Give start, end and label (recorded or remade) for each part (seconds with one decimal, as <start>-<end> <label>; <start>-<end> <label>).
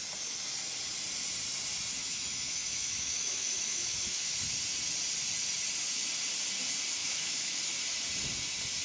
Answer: 0.0-2.0 recorded; 2.0-4.4 remade; 4.4-7.0 recorded; 7.0-7.6 remade; 7.6-8.8 recorded